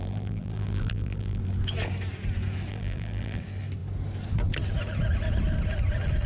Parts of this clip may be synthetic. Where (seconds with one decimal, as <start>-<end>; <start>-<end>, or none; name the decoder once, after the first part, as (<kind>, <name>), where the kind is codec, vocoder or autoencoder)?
0.0-1.4 (vocoder, BigVGAN v2); 2.7-3.4